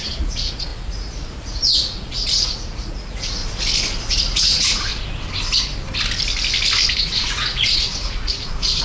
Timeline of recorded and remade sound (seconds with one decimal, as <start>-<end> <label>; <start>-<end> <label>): 0.0-3.4 remade; 3.4-4.1 recorded; 4.1-4.9 remade; 4.9-6.9 recorded; 6.9-8.8 remade